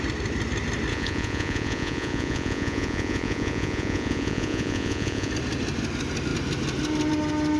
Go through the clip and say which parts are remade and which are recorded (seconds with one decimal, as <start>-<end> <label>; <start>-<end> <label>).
0.0-0.9 recorded; 0.9-5.3 remade; 5.3-7.6 recorded